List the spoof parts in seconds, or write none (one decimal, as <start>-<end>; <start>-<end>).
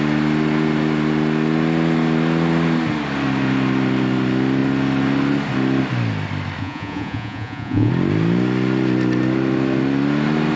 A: 6.6-7.9